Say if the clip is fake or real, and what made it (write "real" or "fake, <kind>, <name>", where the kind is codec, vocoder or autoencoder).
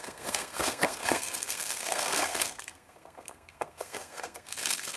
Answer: fake, codec, SNAC